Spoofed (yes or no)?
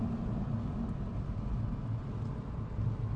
no